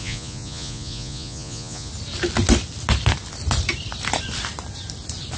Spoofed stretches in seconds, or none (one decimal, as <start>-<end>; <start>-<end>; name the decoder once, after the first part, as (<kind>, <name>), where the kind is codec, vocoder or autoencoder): 0.0-1.9 (vocoder, Vocos)